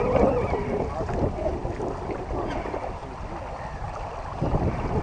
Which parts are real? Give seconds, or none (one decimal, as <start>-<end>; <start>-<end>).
0.0-5.0